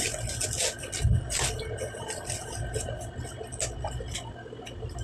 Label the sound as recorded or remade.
recorded